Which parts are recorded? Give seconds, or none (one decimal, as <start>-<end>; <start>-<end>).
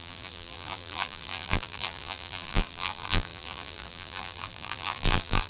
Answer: none